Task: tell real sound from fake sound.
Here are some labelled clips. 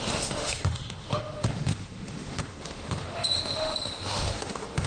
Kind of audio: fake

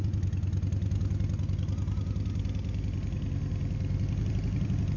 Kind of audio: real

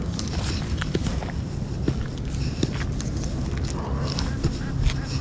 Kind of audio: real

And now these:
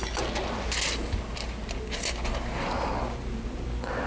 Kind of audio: real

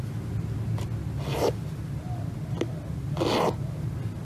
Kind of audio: real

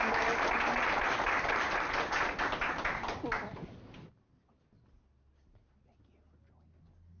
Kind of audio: real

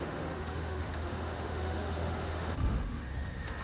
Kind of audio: fake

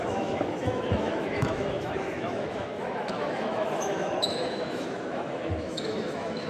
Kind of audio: fake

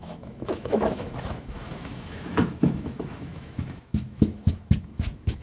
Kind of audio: fake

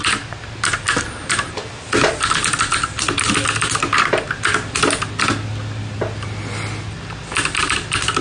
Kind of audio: real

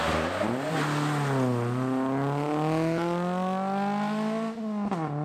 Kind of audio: real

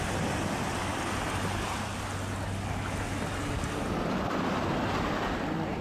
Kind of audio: real